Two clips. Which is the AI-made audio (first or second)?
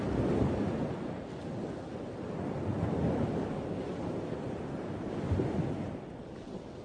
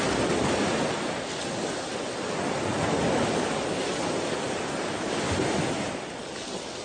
first